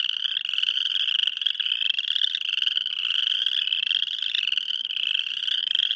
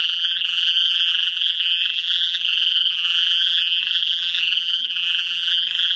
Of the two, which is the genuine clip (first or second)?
first